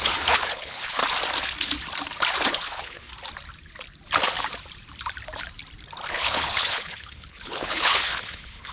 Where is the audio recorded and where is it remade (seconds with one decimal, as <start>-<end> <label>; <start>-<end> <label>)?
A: 0.0-1.0 remade; 1.0-2.5 recorded; 2.5-3.1 remade; 3.1-6.1 recorded; 6.1-8.7 remade

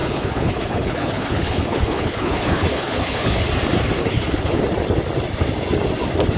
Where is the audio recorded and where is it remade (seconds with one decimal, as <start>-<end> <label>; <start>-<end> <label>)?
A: 0.0-3.5 remade; 3.5-4.0 recorded; 4.0-4.6 remade; 4.6-6.4 recorded

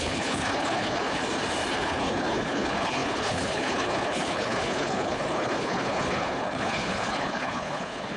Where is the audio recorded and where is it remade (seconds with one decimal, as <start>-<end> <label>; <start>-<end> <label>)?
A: 0.0-1.2 remade; 1.2-1.7 recorded; 1.7-8.2 remade

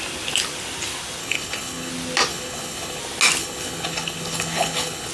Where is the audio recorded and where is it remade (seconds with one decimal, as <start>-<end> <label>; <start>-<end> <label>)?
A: 0.0-1.2 recorded; 1.2-1.9 remade; 1.9-2.3 recorded; 2.3-3.0 remade; 3.0-3.4 recorded; 3.4-5.1 remade

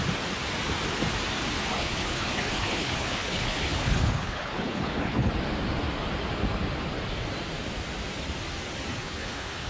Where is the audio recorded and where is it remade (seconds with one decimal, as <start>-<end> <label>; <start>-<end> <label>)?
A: 0.0-1.7 recorded; 1.7-5.3 remade; 5.3-8.9 recorded; 8.9-9.7 remade

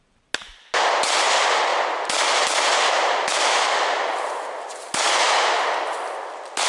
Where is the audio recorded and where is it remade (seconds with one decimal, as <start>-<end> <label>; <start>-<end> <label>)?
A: 0.0-6.7 recorded

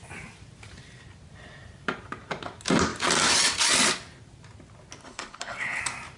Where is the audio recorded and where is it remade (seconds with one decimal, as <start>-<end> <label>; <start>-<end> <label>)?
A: 0.0-5.0 recorded; 5.0-5.8 remade; 5.8-6.2 recorded

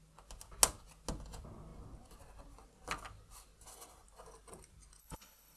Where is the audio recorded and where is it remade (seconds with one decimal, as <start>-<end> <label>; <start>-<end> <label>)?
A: 0.0-5.0 recorded; 5.0-5.6 remade